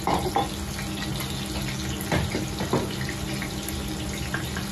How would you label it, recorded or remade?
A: recorded